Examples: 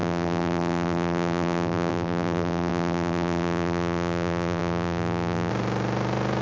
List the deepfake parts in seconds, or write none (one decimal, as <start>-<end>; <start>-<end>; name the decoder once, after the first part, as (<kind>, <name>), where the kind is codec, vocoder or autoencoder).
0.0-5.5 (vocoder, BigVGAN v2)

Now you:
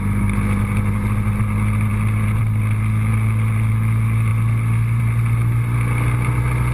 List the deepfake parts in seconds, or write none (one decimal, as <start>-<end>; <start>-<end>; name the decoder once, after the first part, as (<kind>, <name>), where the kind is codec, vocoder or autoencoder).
4.3-5.0 (vocoder, BigVGAN v2)

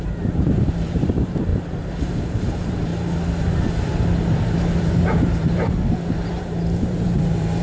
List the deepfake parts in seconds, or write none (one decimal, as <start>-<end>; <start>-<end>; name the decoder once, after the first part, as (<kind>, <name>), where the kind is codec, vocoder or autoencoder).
0.0-1.5 (vocoder, BigVGAN v2); 2.0-2.9; 4.8-7.6

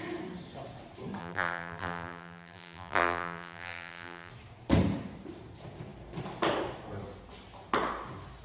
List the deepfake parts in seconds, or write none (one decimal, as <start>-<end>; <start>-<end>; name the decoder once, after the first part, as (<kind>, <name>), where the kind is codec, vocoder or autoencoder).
1.2-4.3 (vocoder, BigVGAN v2)

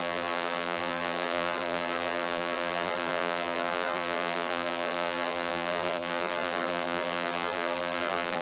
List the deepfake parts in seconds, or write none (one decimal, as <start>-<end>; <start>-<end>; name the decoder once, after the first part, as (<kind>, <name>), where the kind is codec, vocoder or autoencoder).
0.0-8.4 (vocoder, BigVGAN v2)

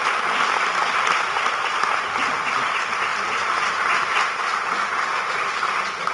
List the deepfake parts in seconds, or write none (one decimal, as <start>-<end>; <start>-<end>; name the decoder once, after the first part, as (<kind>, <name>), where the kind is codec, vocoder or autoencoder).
3.1-4.1 (vocoder, BigVGAN v2)